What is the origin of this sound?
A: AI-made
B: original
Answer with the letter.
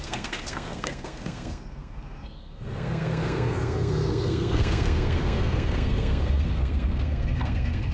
A